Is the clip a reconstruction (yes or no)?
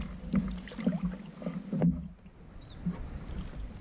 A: no